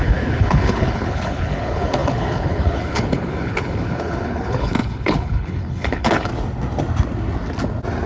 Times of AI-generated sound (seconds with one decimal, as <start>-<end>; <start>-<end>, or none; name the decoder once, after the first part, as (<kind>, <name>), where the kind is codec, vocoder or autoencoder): 0.0-6.3 (codec, HILCodec)